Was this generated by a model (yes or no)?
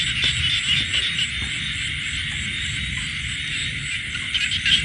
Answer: no